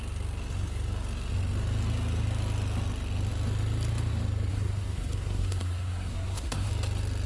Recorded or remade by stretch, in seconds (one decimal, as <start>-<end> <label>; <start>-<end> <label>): 0.0-4.5 recorded; 4.5-6.7 remade; 6.7-7.3 recorded